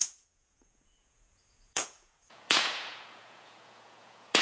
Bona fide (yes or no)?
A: no